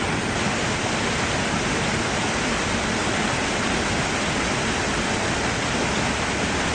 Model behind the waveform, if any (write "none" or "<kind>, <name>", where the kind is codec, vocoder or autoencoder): none